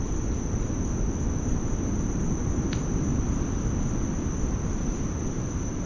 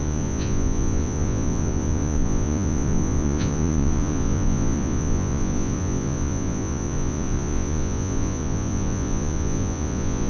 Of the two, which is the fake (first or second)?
second